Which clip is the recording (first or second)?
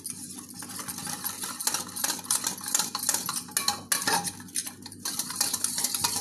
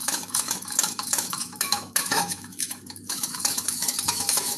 first